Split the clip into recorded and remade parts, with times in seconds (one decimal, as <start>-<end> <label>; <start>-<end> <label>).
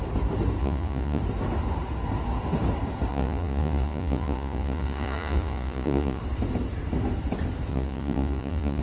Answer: 0.0-0.6 recorded; 0.6-1.2 remade; 1.2-3.1 recorded; 3.1-6.2 remade; 6.2-7.7 recorded; 7.7-8.8 remade